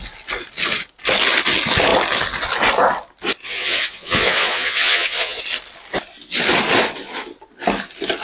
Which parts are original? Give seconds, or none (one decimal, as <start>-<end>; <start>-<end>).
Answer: 0.0-3.4; 5.4-8.2